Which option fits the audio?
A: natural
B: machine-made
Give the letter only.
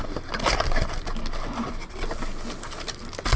A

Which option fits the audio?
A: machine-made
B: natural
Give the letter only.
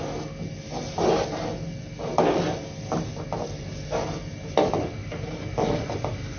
B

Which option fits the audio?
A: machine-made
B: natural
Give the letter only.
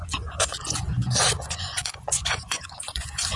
A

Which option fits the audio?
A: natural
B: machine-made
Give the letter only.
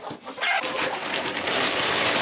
A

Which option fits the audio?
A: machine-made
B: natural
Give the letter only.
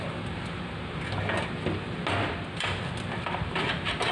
B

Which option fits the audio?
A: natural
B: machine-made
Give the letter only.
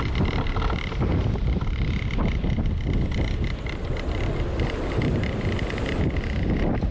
A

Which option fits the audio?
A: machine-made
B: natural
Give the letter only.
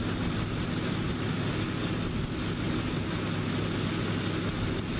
B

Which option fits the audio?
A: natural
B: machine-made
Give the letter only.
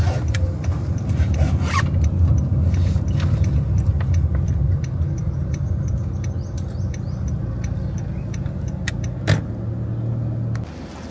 A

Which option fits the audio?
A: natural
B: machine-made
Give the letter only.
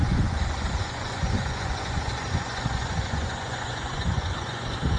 B